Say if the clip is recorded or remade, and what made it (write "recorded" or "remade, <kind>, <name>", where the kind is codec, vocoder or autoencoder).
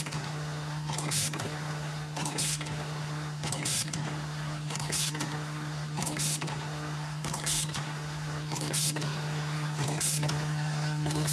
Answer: remade, codec, SNAC